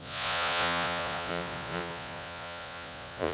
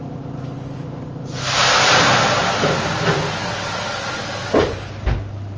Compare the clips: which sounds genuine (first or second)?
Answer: second